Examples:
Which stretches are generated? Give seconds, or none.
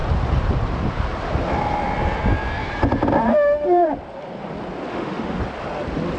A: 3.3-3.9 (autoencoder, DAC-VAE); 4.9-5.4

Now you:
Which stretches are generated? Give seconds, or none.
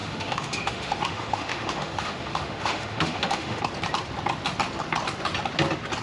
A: 0.0-3.6 (autoencoder, DAC-VAE)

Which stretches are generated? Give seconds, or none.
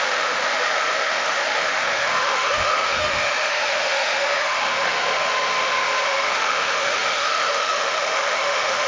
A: 0.0-8.9 (autoencoder, DAC-VAE)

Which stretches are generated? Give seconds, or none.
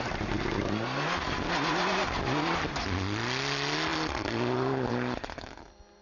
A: none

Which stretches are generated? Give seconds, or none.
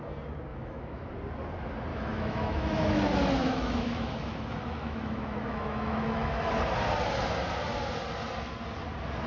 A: 0.5-1.1 (autoencoder, DAC-VAE); 1.9-3.0; 3.4-6.5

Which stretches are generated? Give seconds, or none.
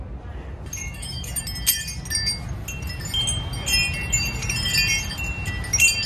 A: 0.8-1.4 (autoencoder, DAC-VAE)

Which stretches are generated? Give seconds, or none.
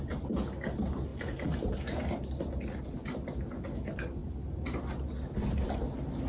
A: none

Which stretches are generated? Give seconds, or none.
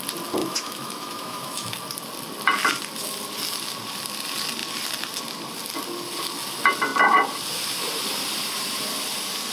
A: 0.4-1.8 (autoencoder, DAC-VAE)